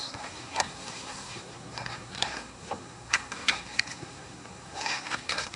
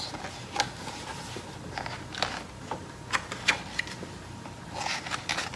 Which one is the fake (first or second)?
first